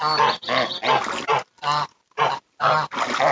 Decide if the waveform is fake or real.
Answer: real